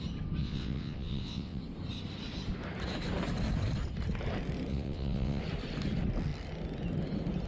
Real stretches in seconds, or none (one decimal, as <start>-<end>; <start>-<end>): 0.0-0.4; 1.6-4.7; 5.4-7.5